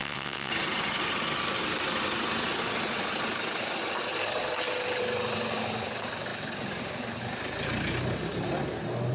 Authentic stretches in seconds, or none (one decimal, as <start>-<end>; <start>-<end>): 0.5-9.1